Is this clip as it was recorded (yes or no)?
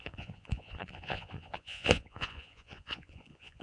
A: no